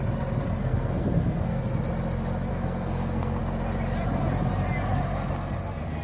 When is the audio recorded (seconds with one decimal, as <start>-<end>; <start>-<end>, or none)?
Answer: 0.0-0.6; 1.6-2.5; 3.4-6.0